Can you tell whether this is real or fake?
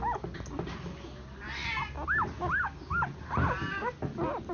real